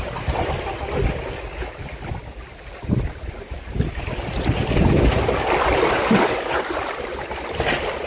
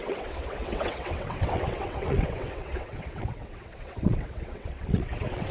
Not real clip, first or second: second